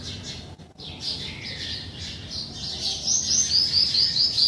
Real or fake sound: real